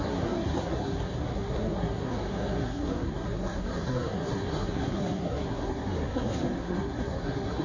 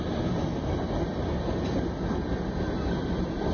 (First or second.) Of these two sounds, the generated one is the first